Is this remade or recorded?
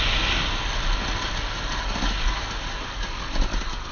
recorded